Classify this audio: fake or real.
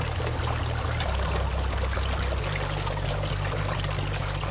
real